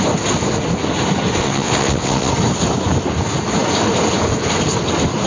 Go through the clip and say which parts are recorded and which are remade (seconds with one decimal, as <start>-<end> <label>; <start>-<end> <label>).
0.0-1.4 recorded; 1.4-2.3 remade; 2.3-5.3 recorded